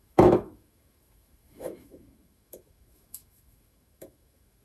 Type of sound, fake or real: fake